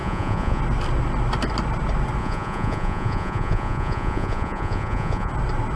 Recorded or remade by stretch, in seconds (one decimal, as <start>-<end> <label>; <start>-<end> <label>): 0.0-0.6 remade; 0.6-2.2 recorded; 2.2-5.3 remade; 5.3-5.8 recorded